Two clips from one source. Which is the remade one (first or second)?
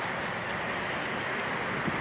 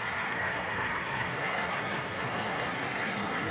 second